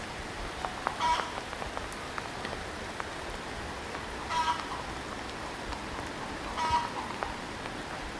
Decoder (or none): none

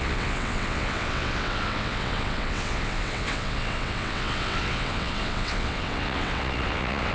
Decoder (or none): vocoder, WaveNeXt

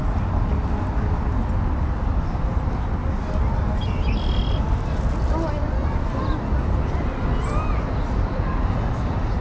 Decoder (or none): none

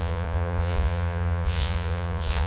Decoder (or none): vocoder, Vocos